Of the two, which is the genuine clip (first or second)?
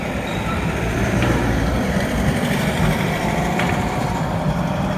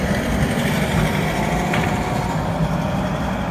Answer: second